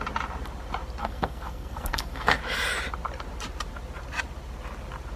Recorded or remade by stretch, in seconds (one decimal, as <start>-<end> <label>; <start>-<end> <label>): 0.0-1.0 recorded; 1.0-2.4 remade; 2.4-5.2 recorded